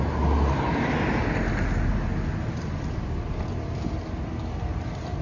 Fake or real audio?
real